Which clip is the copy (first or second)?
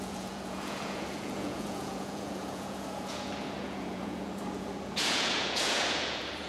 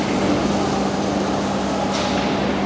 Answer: first